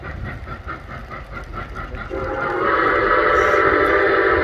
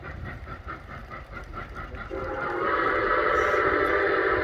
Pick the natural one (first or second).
first